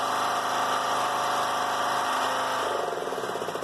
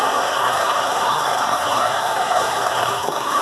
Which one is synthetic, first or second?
second